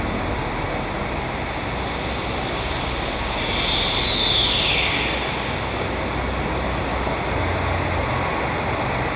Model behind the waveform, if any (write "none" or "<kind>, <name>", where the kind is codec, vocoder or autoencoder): none